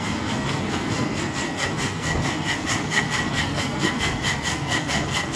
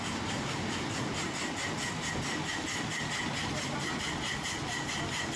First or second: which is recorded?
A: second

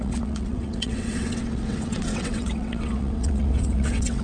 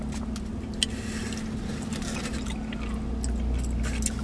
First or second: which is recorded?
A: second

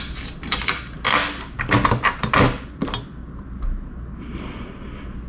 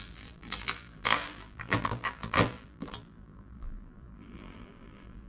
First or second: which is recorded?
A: first